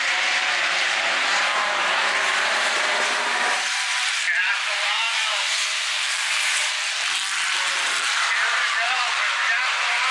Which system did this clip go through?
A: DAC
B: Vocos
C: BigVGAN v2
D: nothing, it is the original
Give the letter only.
C